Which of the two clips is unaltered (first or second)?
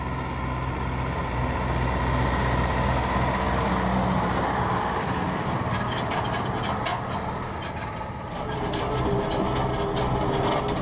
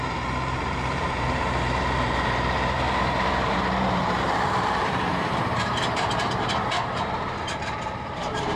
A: first